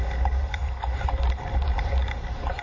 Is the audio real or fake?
real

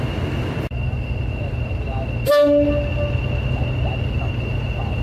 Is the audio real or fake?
real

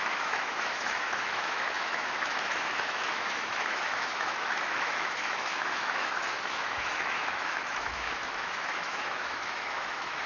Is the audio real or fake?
fake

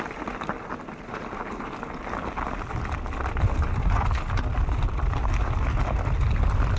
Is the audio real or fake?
real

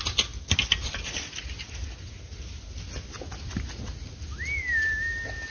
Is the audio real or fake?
real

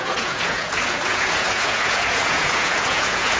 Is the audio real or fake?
fake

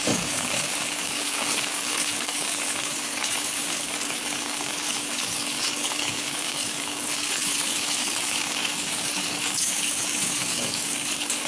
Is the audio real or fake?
fake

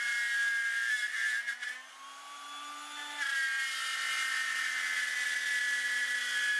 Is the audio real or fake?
real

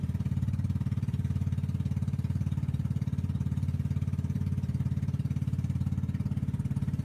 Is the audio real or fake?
fake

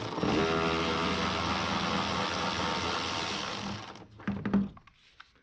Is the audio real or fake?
real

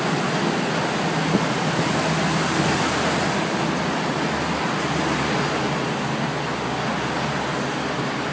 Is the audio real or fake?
real